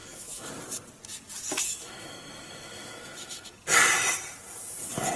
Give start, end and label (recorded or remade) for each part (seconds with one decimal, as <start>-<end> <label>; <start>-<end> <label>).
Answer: 0.0-0.5 remade; 0.5-1.6 recorded; 1.6-3.5 remade; 3.5-5.2 recorded

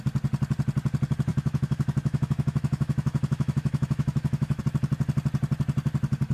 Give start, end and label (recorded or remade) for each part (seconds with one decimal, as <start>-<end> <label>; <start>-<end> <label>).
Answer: 0.0-1.3 recorded; 1.3-4.6 remade; 4.6-6.3 recorded

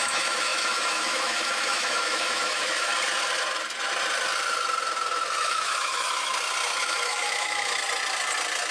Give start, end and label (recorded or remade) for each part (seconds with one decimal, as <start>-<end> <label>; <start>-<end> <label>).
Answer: 0.0-2.9 remade; 2.9-5.4 recorded; 5.4-6.3 remade; 6.3-6.8 recorded; 6.8-7.8 remade; 7.8-8.7 recorded

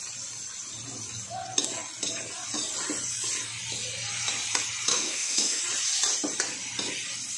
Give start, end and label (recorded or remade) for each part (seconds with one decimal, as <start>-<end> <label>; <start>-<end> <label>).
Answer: 0.0-4.9 recorded; 4.9-5.6 remade; 5.6-7.4 recorded

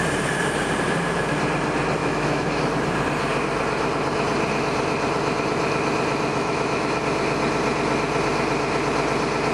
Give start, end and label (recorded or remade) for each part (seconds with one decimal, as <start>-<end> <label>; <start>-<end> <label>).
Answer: 0.0-2.0 recorded; 2.0-2.6 remade; 2.6-6.3 recorded; 6.3-7.0 remade; 7.0-9.5 recorded

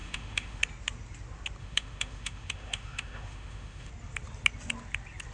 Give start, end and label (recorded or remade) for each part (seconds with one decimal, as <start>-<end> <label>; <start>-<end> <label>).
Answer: 0.0-0.6 remade; 0.6-1.6 recorded; 1.6-3.9 remade; 3.9-5.3 recorded

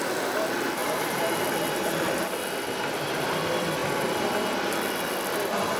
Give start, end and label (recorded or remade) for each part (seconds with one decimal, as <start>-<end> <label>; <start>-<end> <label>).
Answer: 0.0-5.8 recorded